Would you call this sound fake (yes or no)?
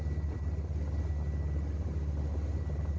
no